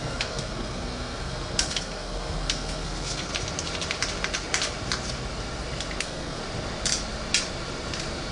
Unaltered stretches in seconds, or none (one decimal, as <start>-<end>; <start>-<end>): 3.3-6.0; 6.4-8.3